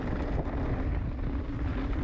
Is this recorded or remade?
recorded